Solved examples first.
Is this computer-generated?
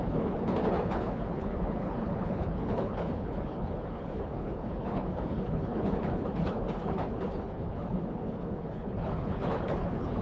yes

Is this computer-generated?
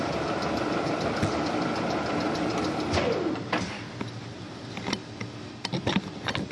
no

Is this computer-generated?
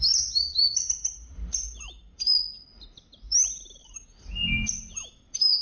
no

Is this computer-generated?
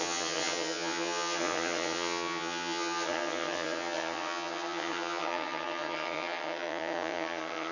yes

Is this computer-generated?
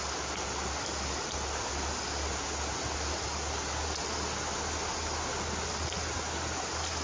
no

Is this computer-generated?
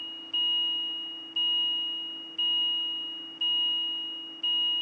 no